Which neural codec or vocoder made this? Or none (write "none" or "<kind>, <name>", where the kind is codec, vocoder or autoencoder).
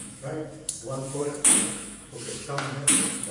autoencoder, DAC-VAE